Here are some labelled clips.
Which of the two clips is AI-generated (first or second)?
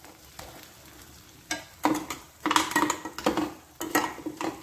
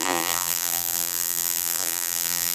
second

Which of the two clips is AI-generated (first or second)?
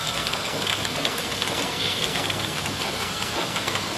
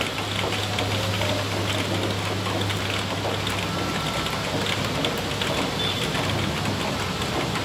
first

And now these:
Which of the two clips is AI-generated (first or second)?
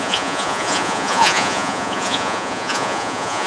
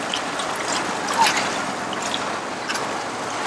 first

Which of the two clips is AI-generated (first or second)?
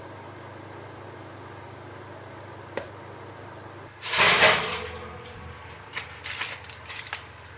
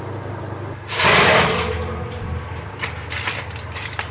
second